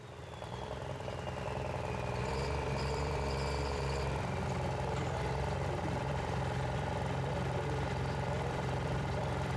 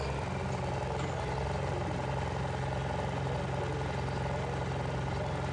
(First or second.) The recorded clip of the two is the second